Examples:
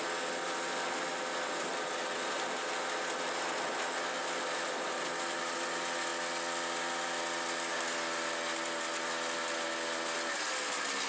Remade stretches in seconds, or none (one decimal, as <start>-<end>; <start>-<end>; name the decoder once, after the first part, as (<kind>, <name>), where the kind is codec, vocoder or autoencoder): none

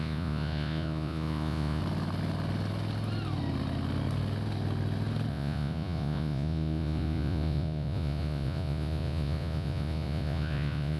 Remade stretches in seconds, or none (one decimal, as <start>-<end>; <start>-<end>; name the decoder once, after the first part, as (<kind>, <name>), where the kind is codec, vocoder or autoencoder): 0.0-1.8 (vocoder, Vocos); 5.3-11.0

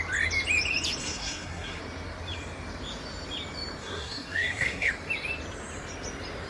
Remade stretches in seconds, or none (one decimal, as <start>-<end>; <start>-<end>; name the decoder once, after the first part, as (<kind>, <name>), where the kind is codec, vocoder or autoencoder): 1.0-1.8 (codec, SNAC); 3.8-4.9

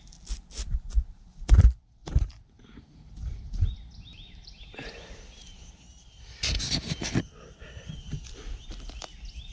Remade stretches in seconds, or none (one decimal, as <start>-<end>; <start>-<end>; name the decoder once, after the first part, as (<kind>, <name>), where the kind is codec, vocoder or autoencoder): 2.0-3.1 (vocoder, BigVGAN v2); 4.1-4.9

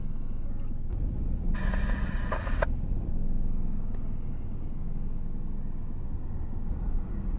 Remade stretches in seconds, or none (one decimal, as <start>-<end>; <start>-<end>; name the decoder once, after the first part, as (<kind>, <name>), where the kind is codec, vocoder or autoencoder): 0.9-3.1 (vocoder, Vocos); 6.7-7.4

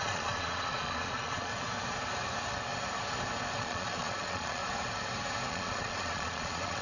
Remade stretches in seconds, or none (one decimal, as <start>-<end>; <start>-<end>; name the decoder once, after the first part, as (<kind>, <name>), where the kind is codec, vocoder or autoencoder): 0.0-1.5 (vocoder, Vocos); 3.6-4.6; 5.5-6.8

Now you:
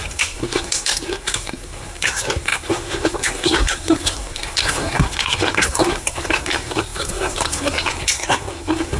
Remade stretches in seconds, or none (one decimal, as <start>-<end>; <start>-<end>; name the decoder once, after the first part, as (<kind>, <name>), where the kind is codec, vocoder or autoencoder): 0.0-9.0 (codec, SNAC)

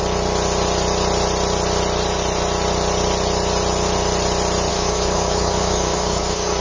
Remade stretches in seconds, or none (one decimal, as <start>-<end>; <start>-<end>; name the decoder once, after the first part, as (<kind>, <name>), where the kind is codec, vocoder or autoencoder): 4.7-6.6 (codec, DAC)